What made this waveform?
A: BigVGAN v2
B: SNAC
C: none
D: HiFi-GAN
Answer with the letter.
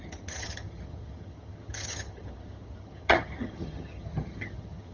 D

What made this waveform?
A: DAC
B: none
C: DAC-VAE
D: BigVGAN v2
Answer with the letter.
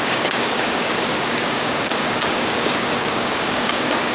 A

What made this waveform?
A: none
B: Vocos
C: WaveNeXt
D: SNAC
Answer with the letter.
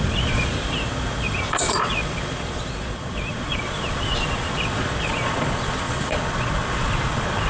B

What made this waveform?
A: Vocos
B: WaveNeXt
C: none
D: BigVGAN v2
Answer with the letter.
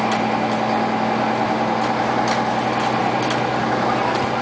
C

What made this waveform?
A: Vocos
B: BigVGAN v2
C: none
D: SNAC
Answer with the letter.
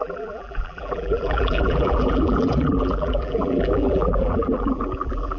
B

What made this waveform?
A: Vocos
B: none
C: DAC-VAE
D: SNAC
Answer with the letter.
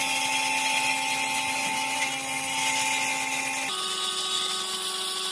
B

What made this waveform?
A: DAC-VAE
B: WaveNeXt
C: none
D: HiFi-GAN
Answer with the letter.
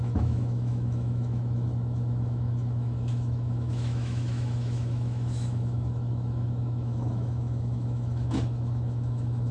A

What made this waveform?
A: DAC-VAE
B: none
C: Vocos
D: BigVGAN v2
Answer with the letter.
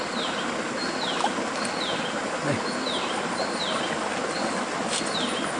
B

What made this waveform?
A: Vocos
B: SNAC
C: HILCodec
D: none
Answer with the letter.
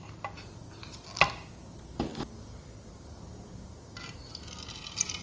D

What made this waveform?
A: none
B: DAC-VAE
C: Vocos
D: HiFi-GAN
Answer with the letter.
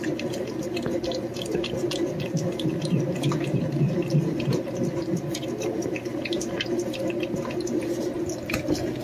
A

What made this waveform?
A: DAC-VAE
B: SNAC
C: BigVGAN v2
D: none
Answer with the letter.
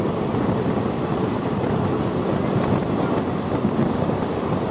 D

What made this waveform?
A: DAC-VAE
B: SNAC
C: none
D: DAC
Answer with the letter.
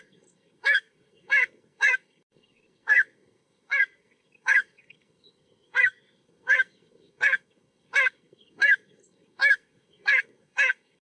B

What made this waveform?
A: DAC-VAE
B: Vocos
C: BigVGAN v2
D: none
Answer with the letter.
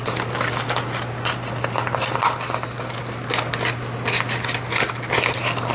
D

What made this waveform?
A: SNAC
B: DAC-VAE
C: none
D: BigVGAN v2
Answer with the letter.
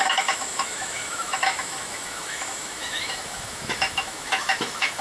B